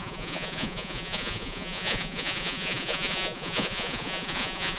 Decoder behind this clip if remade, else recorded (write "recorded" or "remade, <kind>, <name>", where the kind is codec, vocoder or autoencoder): remade, vocoder, Vocos